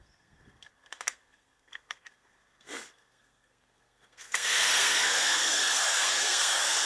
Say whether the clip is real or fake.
fake